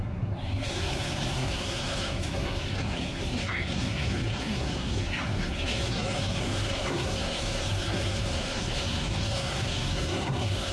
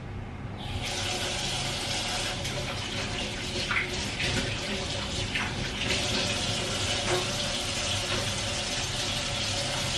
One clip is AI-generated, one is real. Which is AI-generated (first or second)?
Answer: first